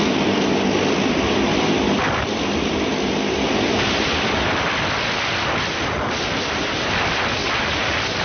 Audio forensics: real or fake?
real